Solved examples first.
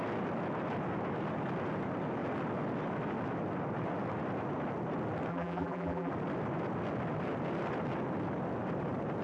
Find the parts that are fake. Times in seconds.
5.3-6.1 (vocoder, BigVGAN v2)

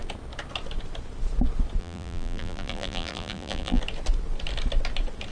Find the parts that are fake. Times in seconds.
1.8-3.8 (vocoder, BigVGAN v2)

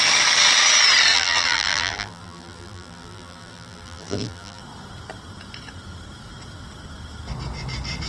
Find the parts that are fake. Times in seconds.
1.1-4.6 (vocoder, BigVGAN v2)